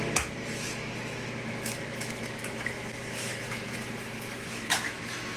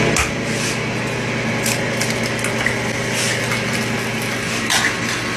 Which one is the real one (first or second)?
second